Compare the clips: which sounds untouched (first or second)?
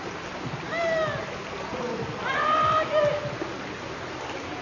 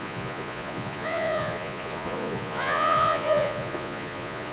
first